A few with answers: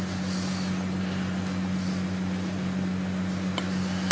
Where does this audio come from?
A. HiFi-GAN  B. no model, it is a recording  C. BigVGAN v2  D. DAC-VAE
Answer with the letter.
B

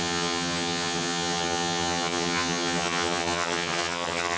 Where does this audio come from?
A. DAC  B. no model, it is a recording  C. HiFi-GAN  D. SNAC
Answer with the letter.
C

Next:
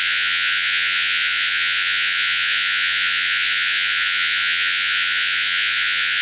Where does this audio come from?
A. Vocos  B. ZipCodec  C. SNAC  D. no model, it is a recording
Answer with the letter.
A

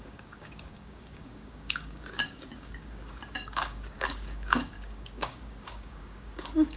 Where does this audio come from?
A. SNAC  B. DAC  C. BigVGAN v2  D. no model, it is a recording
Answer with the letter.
B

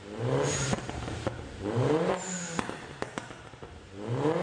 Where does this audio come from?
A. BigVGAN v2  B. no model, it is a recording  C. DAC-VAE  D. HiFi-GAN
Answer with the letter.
A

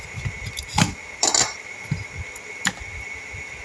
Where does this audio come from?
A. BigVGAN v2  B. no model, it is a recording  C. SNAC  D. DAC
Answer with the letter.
A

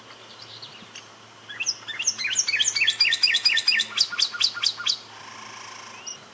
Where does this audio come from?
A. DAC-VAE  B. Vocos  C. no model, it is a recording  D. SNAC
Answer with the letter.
C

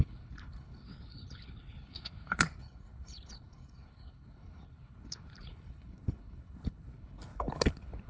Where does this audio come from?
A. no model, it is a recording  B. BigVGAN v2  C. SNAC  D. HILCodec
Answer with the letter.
D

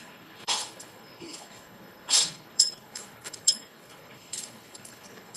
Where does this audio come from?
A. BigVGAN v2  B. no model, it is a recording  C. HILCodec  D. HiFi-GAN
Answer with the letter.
C